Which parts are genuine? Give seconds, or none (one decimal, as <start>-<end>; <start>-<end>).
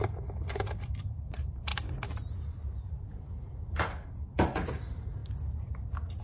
1.7-2.9; 5.2-6.2